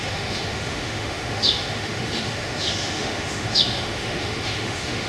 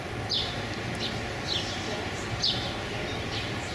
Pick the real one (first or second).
second